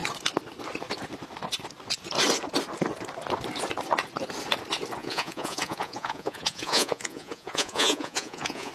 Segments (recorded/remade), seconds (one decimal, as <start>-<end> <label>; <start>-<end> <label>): 0.0-5.0 recorded; 5.0-8.7 remade